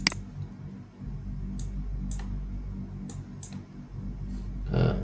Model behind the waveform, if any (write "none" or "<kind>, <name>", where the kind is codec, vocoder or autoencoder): none